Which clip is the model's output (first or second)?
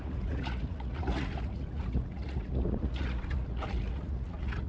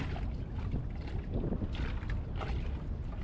first